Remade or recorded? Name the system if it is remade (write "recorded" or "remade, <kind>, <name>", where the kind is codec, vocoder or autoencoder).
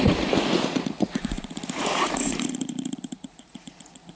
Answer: remade, vocoder, Vocos